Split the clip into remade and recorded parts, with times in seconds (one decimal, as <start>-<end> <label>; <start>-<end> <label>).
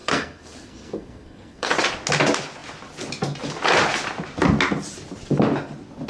0.0-1.7 remade; 1.7-6.1 recorded